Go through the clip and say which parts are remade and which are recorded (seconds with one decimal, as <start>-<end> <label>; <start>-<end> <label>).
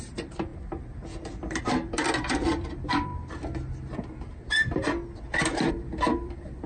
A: 0.0-0.5 remade; 0.5-1.6 recorded; 1.6-3.1 remade; 3.1-5.7 recorded; 5.7-6.7 remade